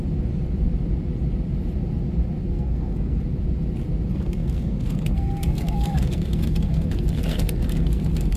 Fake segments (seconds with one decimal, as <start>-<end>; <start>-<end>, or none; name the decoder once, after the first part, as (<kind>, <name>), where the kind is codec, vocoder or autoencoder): 2.4-3.2 (codec, SNAC); 4.1-8.4